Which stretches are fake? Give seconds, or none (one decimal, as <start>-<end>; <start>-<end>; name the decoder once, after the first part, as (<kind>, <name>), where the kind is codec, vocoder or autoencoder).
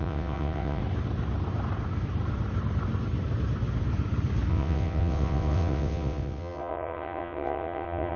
0.0-0.8 (vocoder, WaveNeXt); 4.5-8.2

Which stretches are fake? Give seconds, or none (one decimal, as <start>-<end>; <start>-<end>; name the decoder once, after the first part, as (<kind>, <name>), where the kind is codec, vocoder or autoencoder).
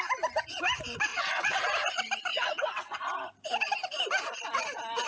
1.1-1.6 (vocoder, WaveNeXt); 2.3-3.0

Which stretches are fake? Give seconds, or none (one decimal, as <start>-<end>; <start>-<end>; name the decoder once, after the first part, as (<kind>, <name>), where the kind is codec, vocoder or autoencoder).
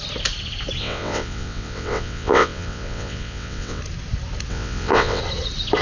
0.8-3.8 (vocoder, WaveNeXt); 4.5-5.2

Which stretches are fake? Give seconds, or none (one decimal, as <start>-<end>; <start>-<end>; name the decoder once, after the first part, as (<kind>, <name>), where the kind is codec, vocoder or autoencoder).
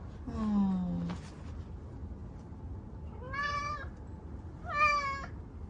none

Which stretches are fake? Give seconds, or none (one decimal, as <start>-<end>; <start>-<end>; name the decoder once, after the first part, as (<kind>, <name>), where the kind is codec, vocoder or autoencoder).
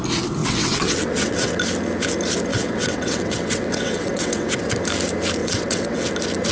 0.4-1.6 (vocoder, WaveNeXt); 2.5-4.7; 5.4-6.1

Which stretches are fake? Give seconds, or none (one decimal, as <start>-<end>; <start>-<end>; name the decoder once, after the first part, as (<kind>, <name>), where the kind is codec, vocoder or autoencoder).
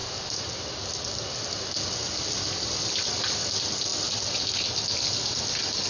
none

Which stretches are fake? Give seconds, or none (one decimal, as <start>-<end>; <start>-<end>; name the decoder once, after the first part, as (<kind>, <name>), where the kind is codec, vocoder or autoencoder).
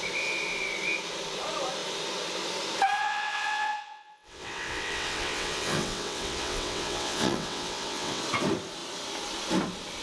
3.0-8.2 (vocoder, WaveNeXt)